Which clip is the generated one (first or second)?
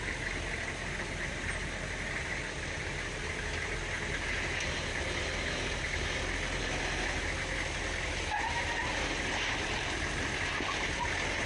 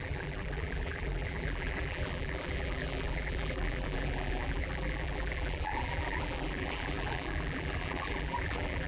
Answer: second